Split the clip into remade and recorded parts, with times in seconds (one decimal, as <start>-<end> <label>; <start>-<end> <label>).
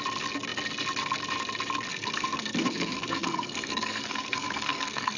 0.0-1.9 recorded; 1.9-5.2 remade